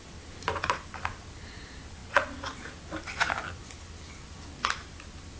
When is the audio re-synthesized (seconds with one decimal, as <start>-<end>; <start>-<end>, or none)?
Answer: none